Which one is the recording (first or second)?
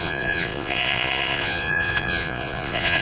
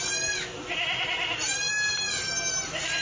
second